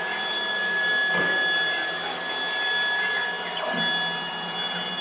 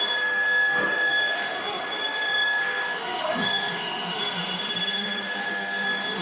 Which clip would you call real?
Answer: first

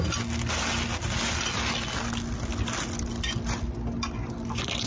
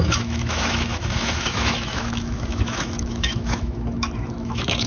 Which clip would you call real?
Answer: first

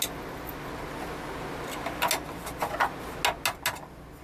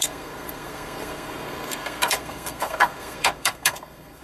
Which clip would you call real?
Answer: first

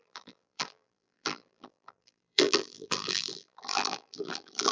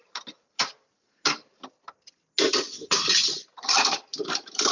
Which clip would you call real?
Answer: second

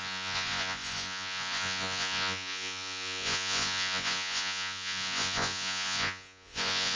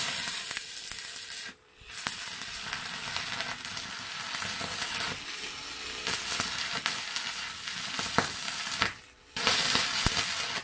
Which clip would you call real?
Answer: second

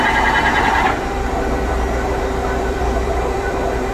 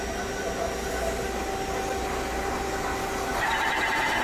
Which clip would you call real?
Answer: second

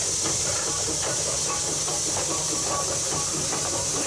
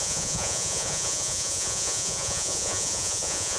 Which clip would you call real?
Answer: first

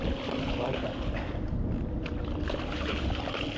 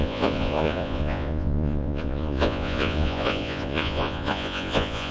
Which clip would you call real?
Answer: first